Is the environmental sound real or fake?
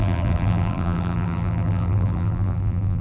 fake